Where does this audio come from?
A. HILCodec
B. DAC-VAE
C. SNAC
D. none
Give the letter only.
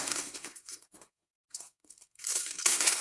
C